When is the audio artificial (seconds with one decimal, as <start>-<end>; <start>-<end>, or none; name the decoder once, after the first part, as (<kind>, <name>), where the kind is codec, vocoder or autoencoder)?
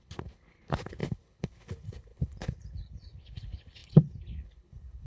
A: 0.0-5.1 (codec, HILCodec)